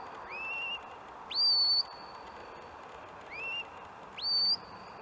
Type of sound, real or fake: real